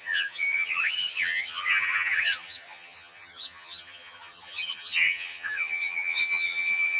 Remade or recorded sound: remade